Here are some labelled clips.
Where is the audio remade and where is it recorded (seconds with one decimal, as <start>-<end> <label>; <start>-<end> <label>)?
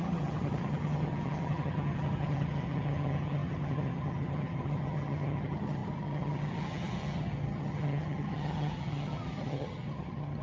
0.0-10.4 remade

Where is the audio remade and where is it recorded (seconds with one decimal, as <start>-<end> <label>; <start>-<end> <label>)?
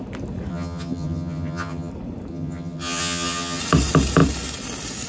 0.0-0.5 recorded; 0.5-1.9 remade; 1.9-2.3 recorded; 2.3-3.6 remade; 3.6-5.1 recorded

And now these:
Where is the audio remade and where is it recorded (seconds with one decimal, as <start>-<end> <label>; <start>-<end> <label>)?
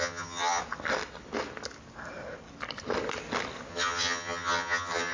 0.0-0.6 remade; 0.6-3.7 recorded; 3.7-5.1 remade